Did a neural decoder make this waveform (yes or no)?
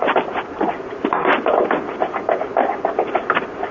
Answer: no